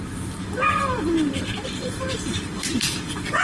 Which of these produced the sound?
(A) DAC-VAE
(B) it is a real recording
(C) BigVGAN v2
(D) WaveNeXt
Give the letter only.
C